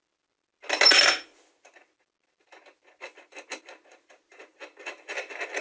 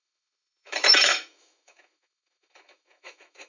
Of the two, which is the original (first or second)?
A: first